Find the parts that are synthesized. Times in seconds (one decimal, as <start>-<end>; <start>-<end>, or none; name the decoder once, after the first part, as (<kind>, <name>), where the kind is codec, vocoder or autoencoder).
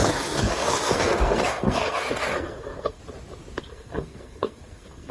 0.0-3.0 (codec, SNAC); 3.6-5.1